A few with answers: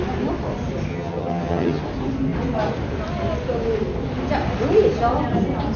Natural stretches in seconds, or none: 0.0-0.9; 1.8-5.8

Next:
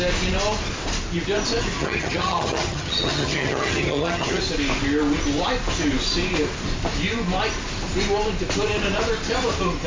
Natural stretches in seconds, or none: 0.0-1.8; 4.4-9.9

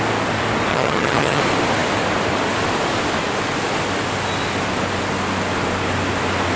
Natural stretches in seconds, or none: 0.0-0.7; 1.4-6.6

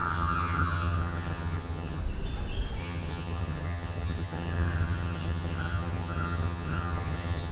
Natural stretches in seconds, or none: 2.0-2.8

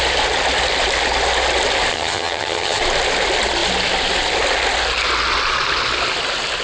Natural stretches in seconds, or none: 0.0-1.9; 2.8-6.6

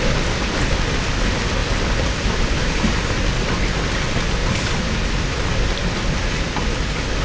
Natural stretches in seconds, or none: 0.0-7.2

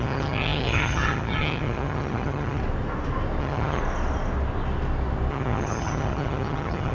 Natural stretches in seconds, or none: 2.6-3.4; 3.8-5.3

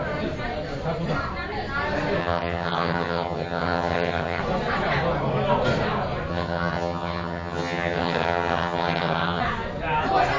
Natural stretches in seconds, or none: 0.0-2.2; 4.4-6.3; 9.4-10.4